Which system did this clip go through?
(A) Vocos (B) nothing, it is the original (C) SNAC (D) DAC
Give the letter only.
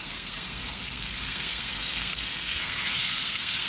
C